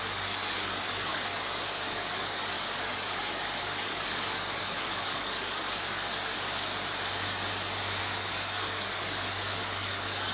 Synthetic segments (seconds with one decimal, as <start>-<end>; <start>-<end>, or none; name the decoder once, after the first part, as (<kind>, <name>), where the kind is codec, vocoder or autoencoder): 0.0-6.7 (codec, DAC); 8.0-10.3